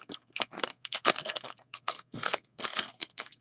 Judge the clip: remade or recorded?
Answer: remade